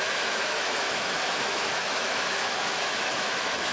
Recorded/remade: remade